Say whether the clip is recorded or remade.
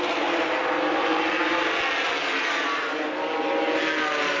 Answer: recorded